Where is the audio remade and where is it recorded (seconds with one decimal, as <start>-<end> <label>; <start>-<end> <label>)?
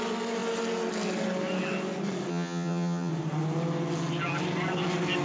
0.0-2.3 recorded; 2.3-3.1 remade; 3.1-5.2 recorded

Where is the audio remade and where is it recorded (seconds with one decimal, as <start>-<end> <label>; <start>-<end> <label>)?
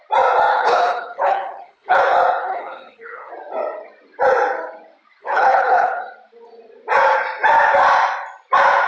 0.0-0.5 recorded; 0.5-2.0 remade; 2.0-2.4 recorded; 2.4-3.3 remade; 3.3-5.2 recorded; 5.2-6.0 remade; 6.0-8.9 recorded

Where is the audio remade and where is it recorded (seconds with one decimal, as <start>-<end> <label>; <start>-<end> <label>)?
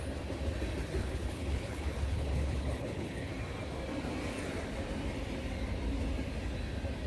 0.0-1.0 recorded; 1.0-3.3 remade; 3.3-7.1 recorded